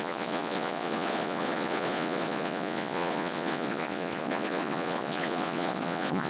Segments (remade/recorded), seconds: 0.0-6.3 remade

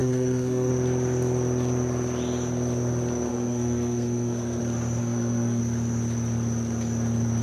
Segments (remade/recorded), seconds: 0.0-0.7 remade; 0.7-3.3 recorded; 3.3-4.6 remade; 4.6-5.0 recorded; 5.0-5.6 remade; 5.6-7.4 recorded

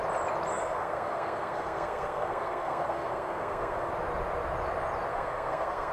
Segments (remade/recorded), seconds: 0.0-0.5 recorded; 0.5-3.9 remade; 3.9-5.1 recorded; 5.1-5.9 remade

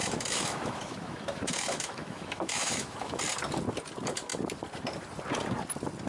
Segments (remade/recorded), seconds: 0.0-3.2 remade; 3.2-6.1 recorded